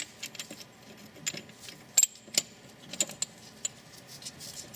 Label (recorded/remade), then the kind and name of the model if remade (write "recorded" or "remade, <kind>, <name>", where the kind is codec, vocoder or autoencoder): recorded